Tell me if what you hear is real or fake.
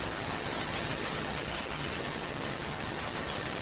fake